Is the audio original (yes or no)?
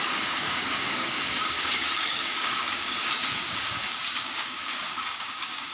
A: no